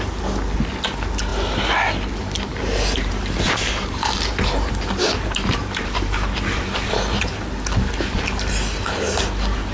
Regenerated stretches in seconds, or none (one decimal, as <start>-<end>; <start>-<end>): 2.5-7.4